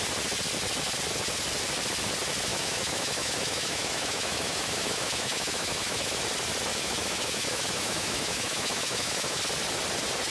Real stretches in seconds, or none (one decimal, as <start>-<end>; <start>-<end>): 0.0-2.5; 6.2-6.7; 9.4-10.3